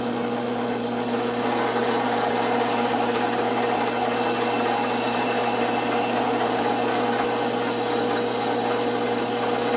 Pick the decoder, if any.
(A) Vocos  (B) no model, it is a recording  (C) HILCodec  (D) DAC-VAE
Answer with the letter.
B